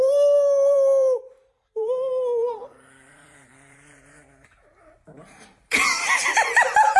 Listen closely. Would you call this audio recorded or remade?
remade